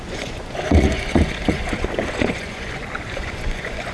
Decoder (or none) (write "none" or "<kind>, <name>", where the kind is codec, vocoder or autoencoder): vocoder, Vocos